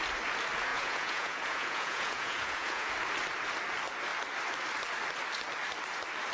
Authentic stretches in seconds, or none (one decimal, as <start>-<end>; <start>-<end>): 0.0-0.7; 2.9-6.3